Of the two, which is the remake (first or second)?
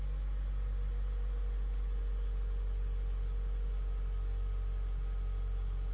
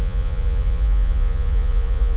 second